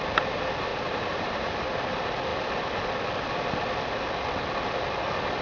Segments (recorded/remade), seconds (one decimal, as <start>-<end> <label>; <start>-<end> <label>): 0.0-0.7 recorded; 0.7-1.8 remade; 1.8-5.4 recorded